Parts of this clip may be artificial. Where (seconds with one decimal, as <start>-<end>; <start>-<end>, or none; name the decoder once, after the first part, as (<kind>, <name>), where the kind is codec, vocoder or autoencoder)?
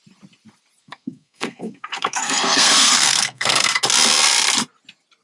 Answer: 0.8-3.7 (codec, SNAC)